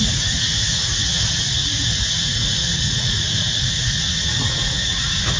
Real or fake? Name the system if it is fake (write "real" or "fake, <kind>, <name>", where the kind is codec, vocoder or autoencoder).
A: fake, vocoder, Vocos